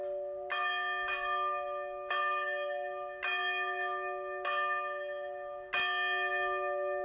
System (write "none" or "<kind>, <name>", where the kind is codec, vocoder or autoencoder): none